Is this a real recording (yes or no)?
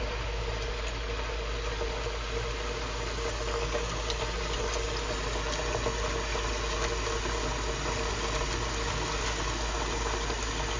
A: yes